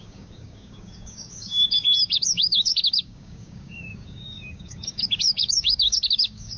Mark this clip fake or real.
fake